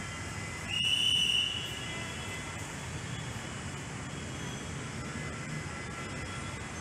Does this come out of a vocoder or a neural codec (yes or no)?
no